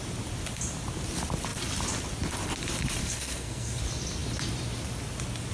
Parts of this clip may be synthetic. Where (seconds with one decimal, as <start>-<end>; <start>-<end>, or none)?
3.0-3.8